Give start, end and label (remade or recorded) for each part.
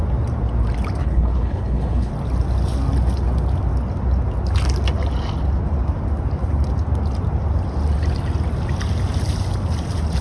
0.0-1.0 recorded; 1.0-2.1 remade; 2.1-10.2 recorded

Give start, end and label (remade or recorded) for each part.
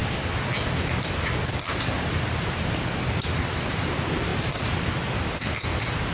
0.0-6.1 recorded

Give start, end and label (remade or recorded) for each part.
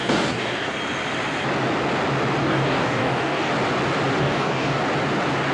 0.0-0.7 remade; 0.7-2.4 recorded; 2.4-3.5 remade; 3.5-4.2 recorded; 4.2-4.8 remade; 4.8-5.5 recorded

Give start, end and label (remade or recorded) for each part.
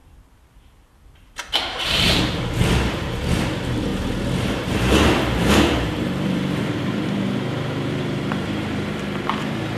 0.0-1.6 recorded; 1.6-3.9 remade; 3.9-4.7 recorded; 4.7-9.8 remade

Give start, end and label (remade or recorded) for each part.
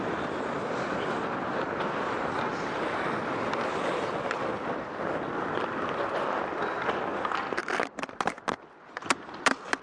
0.0-9.8 recorded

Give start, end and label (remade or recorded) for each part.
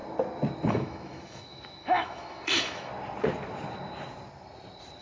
0.0-0.7 recorded; 0.7-2.9 remade; 2.9-5.0 recorded